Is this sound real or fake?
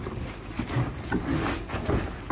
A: real